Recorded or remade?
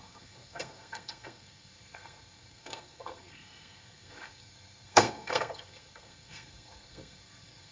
remade